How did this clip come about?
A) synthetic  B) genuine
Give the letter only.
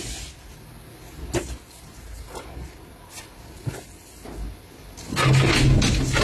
B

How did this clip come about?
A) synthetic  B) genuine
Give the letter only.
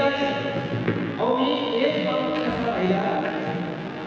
A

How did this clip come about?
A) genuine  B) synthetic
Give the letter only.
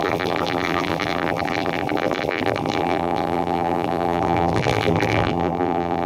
B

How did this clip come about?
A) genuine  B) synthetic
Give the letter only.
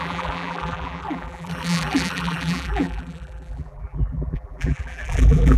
B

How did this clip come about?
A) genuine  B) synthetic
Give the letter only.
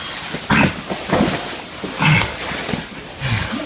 A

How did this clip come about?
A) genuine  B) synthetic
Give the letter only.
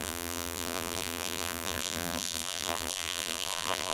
B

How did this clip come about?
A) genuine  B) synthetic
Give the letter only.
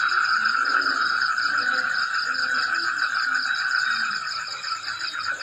A